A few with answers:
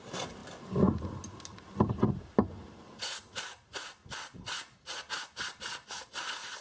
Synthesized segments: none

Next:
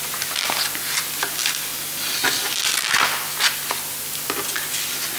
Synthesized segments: none

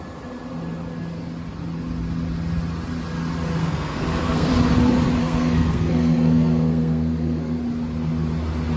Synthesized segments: 3.6-4.5 (codec, SNAC); 5.2-7.6

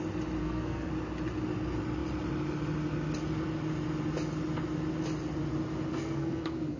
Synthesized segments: 0.4-0.9 (codec, SNAC); 5.9-6.8

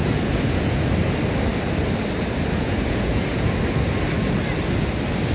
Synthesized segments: 0.0-0.8 (vocoder, Vocos); 2.5-3.5

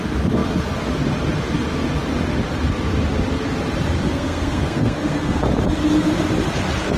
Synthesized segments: 4.1-5.4 (codec, SNAC)

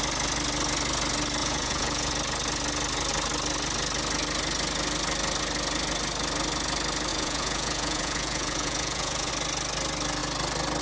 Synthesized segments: 1.4-2.1 (vocoder, Vocos); 7.1-9.3